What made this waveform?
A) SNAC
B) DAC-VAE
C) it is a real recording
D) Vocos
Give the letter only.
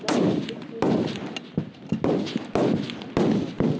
C